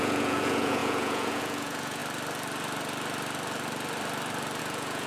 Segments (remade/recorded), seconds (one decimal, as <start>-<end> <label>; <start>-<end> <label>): 0.0-2.0 remade; 2.0-4.6 recorded; 4.6-5.1 remade